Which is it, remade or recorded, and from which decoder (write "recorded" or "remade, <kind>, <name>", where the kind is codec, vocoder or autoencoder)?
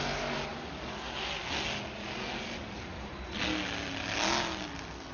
recorded